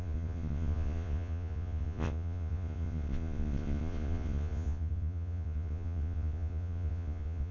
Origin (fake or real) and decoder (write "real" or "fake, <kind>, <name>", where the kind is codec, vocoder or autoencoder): fake, vocoder, Vocos